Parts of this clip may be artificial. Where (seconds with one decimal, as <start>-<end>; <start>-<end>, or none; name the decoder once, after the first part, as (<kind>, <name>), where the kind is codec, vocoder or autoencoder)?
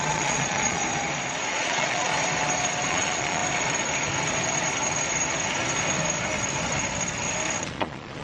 0.0-0.8 (vocoder, Vocos); 1.5-2.1; 2.9-3.4; 7.6-8.2